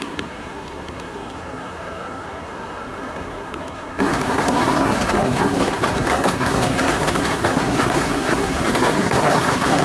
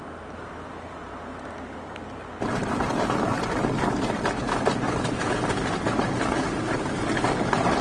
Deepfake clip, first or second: first